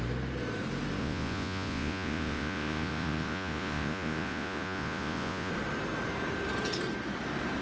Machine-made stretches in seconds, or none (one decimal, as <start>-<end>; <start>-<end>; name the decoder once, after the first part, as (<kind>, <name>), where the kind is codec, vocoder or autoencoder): 1.0-5.5 (vocoder, Vocos)